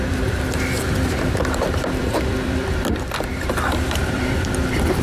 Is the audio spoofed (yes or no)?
yes